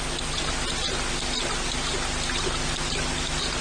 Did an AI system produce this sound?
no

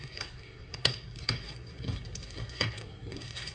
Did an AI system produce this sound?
yes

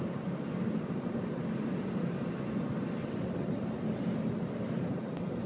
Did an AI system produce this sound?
no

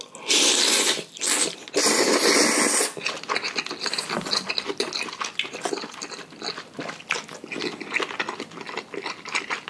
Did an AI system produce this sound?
no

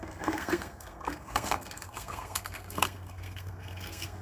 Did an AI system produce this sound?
yes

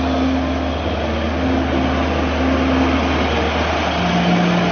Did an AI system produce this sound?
no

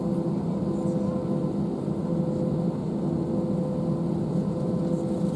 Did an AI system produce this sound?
no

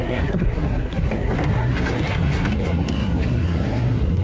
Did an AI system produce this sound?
yes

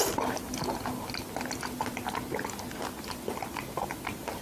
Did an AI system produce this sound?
no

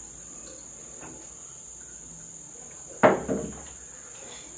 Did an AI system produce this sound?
no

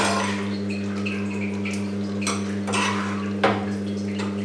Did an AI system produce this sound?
no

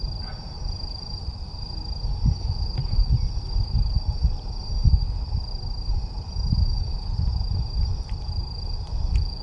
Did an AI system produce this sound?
no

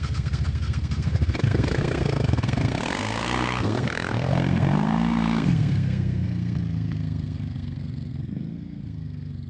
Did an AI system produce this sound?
yes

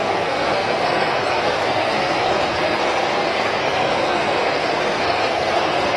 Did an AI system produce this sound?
yes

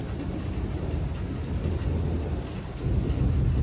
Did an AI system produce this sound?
no